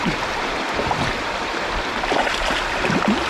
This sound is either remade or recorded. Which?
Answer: recorded